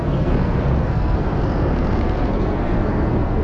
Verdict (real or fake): fake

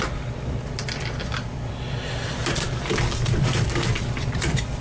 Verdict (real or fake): fake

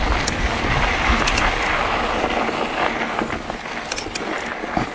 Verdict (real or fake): real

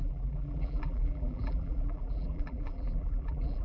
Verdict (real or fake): fake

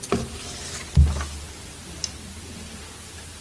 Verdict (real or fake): real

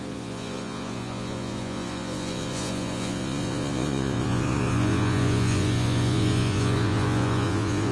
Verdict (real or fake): fake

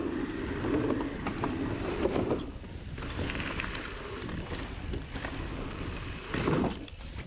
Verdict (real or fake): real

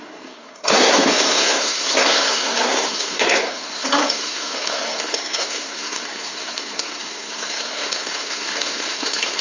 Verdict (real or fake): fake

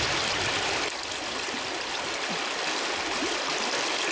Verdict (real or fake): real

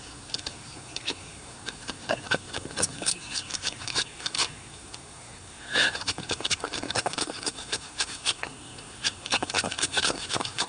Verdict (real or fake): fake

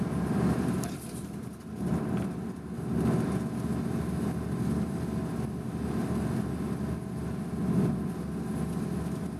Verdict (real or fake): real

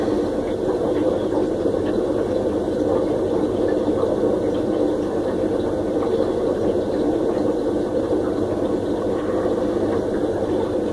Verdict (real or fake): fake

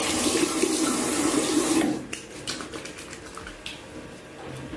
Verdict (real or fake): real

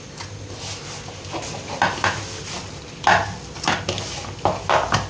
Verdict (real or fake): real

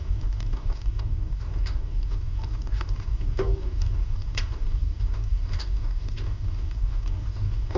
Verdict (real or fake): fake